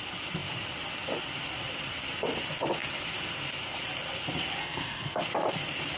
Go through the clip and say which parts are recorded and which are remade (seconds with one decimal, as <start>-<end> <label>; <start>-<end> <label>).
0.0-4.6 recorded; 4.6-5.2 remade; 5.2-6.0 recorded